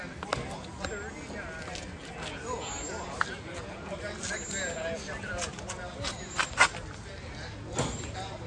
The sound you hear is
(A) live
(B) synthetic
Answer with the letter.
A